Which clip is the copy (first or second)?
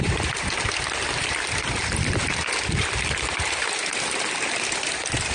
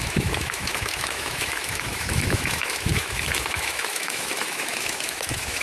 second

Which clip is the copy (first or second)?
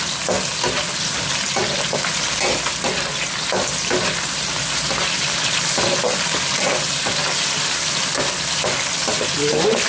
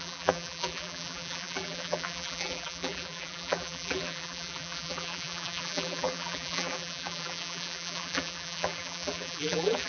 second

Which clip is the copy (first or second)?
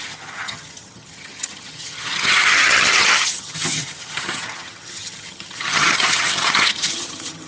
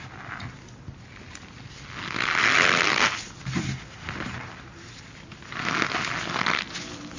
first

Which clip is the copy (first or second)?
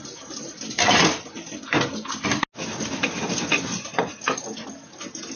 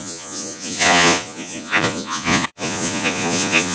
second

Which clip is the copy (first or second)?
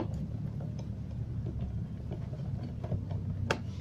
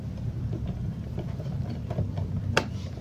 second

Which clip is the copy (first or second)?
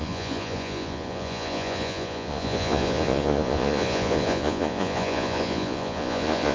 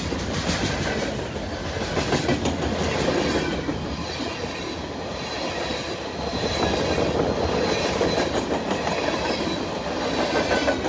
first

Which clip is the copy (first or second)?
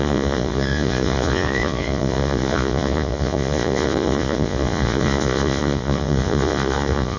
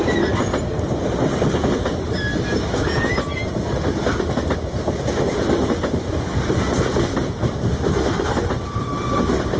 first